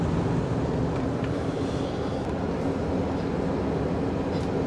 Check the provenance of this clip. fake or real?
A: real